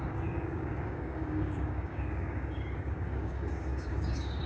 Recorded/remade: remade